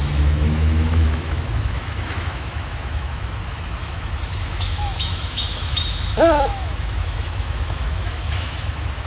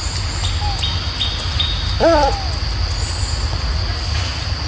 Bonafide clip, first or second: second